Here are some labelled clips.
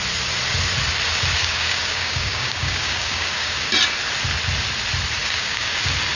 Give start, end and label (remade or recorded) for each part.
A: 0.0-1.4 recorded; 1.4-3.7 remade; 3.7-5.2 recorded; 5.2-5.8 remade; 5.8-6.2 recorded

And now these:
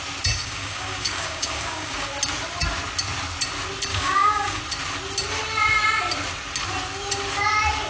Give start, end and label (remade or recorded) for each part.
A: 0.0-0.4 recorded; 0.4-2.1 remade; 2.1-3.9 recorded; 3.9-4.6 remade; 4.6-7.9 recorded

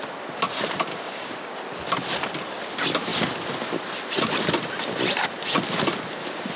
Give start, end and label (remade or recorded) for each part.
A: 0.0-0.9 recorded; 0.9-1.5 remade; 1.5-6.6 recorded

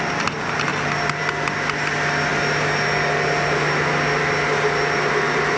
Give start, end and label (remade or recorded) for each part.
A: 0.0-5.6 recorded

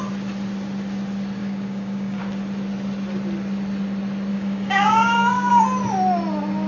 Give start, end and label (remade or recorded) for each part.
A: 0.0-1.4 recorded; 1.4-2.2 remade; 2.2-4.3 recorded; 4.3-5.6 remade; 5.6-6.7 recorded

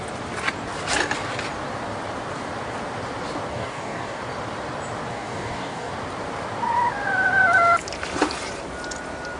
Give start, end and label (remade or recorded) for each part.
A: 0.0-3.5 recorded; 3.5-4.2 remade; 4.2-5.1 recorded; 5.1-5.9 remade; 5.9-9.4 recorded

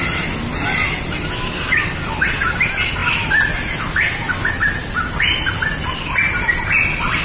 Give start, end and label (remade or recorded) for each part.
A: 0.0-7.2 recorded